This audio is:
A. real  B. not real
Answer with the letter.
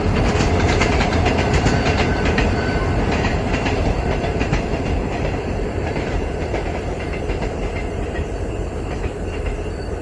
B